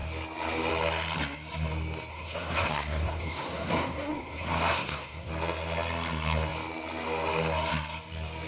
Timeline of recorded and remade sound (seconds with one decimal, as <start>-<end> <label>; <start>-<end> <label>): 0.0-2.1 recorded; 2.1-5.3 remade; 5.3-8.5 recorded